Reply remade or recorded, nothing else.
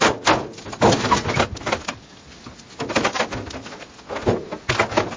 recorded